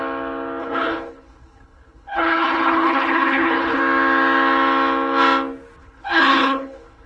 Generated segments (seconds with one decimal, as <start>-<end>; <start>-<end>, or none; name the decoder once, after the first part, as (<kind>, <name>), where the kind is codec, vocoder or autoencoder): 0.6-3.8 (codec, HILCodec); 5.8-7.1